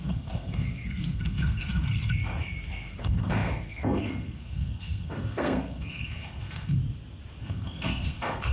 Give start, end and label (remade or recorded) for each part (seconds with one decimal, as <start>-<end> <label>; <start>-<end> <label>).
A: 0.0-2.2 remade; 2.2-3.0 recorded; 3.0-6.8 remade; 6.8-7.4 recorded; 7.4-8.5 remade